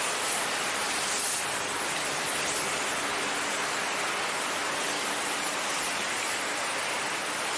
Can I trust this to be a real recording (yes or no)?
yes